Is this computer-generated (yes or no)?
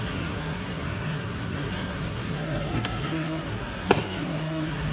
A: yes